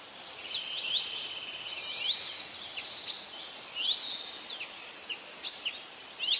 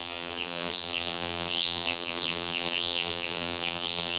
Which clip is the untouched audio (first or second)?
first